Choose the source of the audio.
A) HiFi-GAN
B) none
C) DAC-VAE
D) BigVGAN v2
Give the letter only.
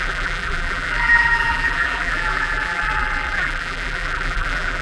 D